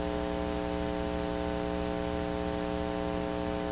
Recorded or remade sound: recorded